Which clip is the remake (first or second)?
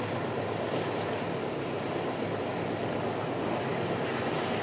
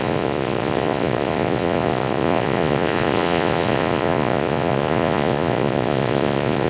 second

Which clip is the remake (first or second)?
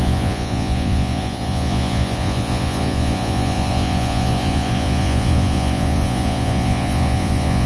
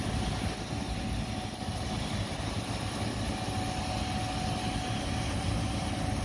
first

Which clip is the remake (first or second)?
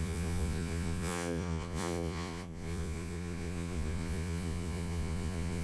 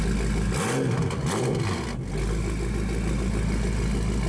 first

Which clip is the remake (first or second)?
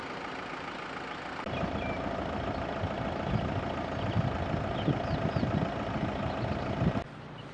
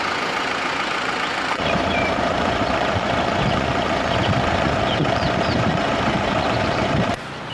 second